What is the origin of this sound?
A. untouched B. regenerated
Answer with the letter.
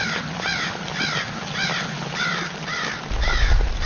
A